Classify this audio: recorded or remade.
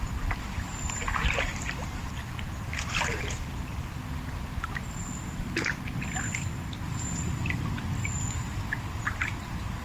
recorded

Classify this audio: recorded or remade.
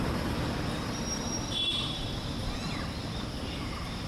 recorded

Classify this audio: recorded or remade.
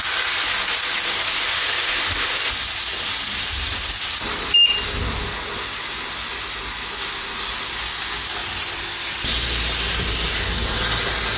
recorded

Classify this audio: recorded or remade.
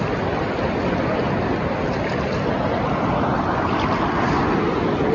recorded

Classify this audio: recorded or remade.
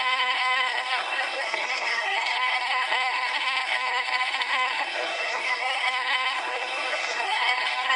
remade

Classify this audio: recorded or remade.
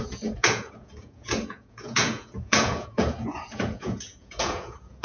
remade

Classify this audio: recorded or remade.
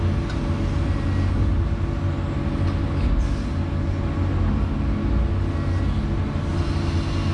recorded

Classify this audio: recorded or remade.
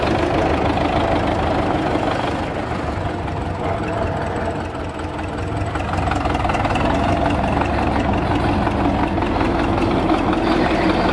recorded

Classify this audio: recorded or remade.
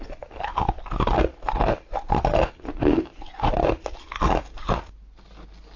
recorded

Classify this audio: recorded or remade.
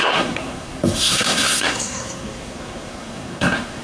remade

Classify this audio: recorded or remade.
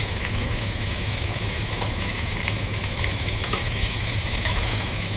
remade